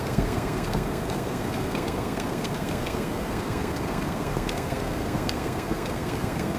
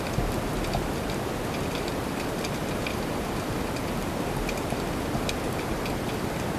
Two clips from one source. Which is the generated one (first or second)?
first